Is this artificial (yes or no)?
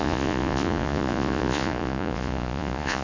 yes